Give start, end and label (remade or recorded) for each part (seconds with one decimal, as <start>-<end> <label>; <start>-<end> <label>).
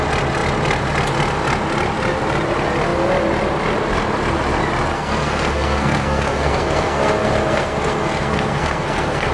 0.0-4.9 recorded; 4.9-9.3 remade